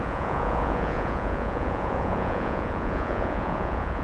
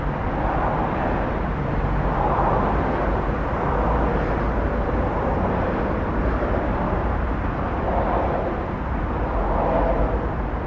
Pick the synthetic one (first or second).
first